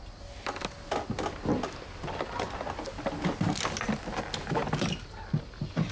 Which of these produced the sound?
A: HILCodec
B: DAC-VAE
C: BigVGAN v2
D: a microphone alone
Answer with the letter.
D